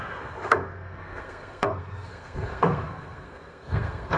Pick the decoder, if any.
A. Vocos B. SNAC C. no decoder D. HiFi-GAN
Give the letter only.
B